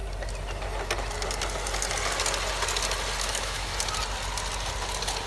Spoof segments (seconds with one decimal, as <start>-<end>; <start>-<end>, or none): 3.2-3.7

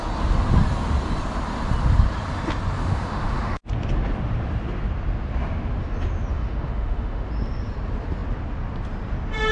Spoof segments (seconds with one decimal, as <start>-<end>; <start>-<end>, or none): 2.8-3.6; 6.3-7.3

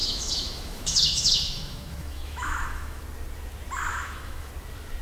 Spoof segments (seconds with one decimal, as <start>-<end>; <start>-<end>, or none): 0.0-3.0; 3.9-4.5

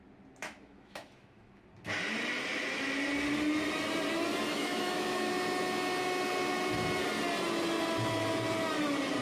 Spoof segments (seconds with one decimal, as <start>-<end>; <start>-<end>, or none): 0.4-1.6; 4.5-5.3

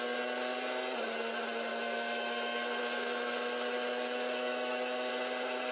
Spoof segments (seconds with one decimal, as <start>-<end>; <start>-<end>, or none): 1.7-5.1

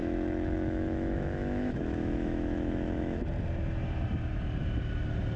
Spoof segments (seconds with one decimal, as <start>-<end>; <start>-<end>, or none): 0.0-3.2

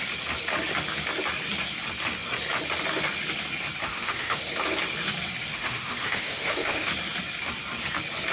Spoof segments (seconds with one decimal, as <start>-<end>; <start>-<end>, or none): 3.9-4.4; 5.5-6.9

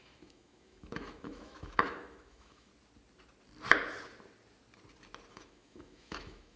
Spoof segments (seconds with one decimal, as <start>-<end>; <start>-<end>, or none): 0.0-2.7; 5.3-6.6